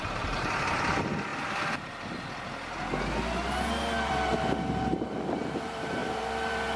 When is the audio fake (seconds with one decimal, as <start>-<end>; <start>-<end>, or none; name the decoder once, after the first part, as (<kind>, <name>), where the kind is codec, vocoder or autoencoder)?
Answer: 0.0-1.3 (vocoder, BigVGAN v2); 4.1-6.8